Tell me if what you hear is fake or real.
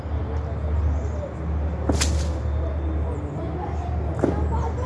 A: real